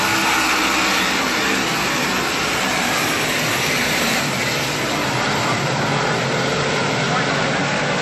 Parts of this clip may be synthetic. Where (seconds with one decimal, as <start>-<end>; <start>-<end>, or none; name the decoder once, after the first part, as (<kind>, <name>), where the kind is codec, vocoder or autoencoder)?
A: 2.0-5.8 (vocoder, BigVGAN v2)